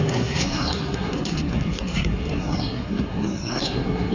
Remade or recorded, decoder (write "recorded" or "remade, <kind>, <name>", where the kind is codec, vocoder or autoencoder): remade, codec, SNAC